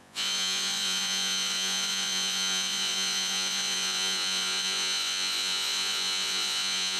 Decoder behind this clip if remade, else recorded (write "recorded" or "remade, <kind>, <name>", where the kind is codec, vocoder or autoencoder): remade, vocoder, Vocos